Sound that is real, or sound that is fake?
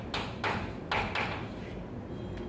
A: real